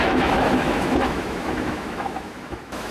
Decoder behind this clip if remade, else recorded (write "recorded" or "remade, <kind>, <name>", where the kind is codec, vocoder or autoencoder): remade, autoencoder, DAC-VAE